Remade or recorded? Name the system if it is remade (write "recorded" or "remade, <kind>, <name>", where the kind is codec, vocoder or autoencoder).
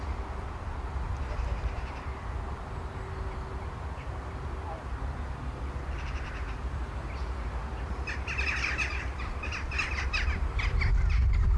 recorded